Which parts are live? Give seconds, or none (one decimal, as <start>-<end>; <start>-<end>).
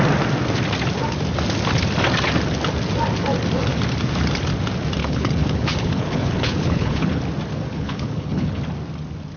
0.0-5.0; 7.2-7.7; 8.6-9.4